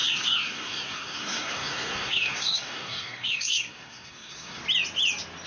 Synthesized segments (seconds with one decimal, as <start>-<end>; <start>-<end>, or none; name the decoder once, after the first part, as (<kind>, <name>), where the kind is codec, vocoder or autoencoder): 0.0-4.6 (codec, SNAC)

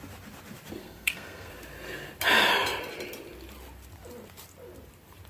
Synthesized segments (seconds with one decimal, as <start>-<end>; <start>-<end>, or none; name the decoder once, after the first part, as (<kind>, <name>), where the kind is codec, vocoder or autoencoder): 0.8-1.5 (codec, SNAC)

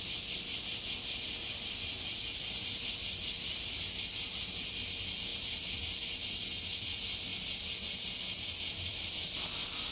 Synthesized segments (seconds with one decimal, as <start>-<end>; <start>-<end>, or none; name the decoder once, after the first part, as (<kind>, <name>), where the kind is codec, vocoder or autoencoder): none

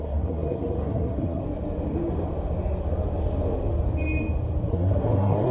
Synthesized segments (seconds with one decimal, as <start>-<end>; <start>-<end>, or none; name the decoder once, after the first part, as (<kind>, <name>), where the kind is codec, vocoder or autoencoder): 0.0-1.4 (codec, SNAC); 4.7-5.5

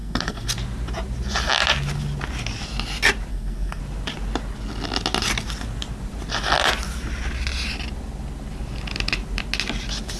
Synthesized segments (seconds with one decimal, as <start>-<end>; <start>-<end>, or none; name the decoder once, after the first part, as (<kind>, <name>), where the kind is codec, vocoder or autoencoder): 0.0-0.5 (codec, SNAC); 3.3-3.8

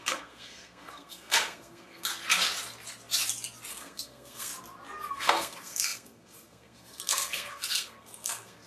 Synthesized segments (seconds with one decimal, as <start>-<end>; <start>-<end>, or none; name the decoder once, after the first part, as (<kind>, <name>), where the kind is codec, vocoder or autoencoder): 0.0-2.1 (codec, SNAC); 3.7-4.5; 5.1-8.7

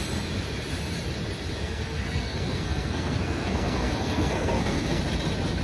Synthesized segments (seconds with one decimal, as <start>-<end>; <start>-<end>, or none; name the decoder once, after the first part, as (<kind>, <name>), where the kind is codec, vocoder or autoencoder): 1.6-5.0 (codec, SNAC)